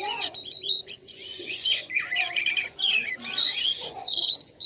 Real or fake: fake